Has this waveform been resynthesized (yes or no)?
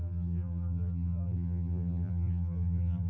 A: yes